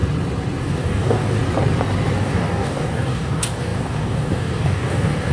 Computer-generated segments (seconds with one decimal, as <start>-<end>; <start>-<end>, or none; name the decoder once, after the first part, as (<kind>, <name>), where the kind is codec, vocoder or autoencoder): 0.6-1.4 (codec, DAC); 2.2-5.3